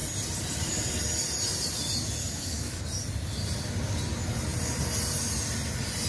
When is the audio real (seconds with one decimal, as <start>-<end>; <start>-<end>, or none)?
0.0-2.2; 2.8-6.1